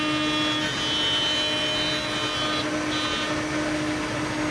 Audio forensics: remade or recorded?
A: recorded